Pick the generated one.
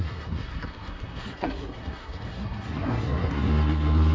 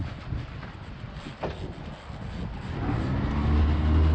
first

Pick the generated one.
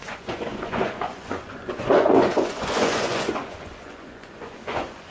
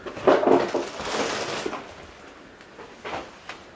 first